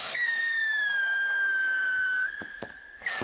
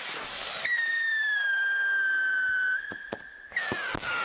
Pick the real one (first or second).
second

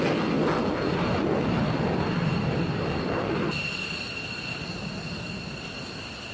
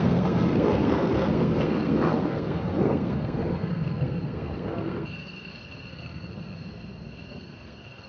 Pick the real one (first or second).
first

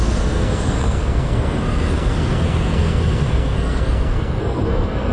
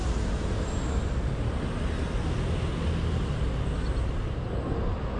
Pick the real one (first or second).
second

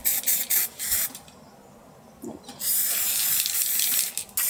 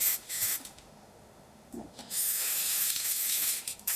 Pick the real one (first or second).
first